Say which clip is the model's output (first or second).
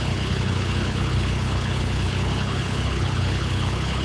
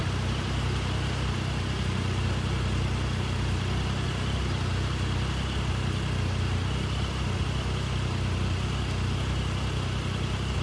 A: first